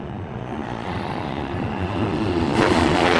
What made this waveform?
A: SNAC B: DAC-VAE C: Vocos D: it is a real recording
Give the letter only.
C